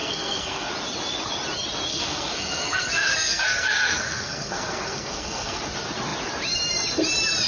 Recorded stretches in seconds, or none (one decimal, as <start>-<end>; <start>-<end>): 0.7-1.9; 5.6-7.5